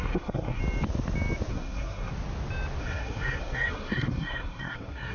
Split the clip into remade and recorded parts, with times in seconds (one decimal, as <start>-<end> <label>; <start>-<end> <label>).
0.0-0.6 remade; 0.6-1.5 recorded; 1.5-2.1 remade; 2.1-2.8 recorded; 2.8-5.1 remade